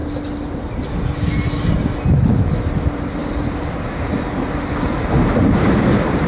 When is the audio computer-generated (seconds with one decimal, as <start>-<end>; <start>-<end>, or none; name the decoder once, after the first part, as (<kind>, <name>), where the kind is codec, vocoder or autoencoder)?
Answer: none